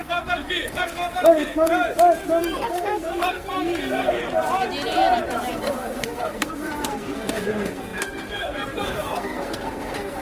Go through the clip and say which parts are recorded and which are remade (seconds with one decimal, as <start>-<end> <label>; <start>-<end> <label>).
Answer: 0.0-1.7 remade; 1.7-2.4 recorded; 2.4-4.2 remade; 4.2-5.5 recorded; 5.5-10.2 remade